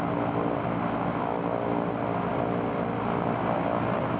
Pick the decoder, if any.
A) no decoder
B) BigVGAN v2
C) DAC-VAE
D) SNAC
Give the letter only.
A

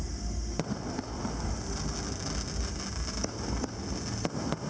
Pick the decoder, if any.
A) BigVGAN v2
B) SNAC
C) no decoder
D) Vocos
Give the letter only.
C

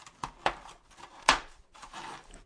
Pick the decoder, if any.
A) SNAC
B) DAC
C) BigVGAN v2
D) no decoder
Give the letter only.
C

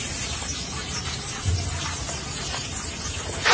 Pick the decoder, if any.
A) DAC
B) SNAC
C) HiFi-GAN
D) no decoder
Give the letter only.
D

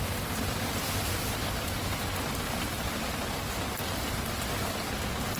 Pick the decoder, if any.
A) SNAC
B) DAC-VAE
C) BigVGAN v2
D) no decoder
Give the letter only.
D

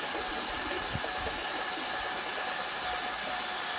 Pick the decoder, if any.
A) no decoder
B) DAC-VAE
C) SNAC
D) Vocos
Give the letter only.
A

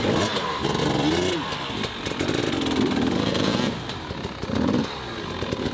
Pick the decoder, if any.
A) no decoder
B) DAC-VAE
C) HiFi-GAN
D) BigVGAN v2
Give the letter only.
A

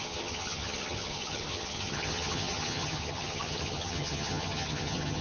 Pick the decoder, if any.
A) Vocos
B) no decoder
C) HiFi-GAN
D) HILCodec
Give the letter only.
C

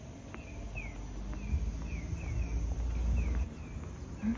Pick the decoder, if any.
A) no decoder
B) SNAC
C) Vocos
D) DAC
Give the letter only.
A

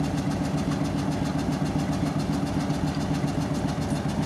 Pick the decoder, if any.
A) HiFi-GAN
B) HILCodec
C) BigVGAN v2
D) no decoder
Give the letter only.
D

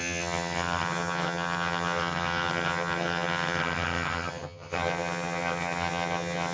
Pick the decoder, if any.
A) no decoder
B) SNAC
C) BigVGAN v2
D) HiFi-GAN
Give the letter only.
D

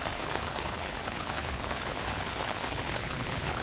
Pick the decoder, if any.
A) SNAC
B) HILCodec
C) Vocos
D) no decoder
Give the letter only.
B